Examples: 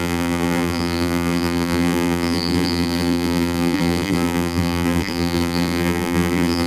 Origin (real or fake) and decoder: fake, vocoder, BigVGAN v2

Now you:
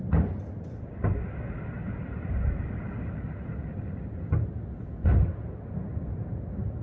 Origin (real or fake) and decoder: real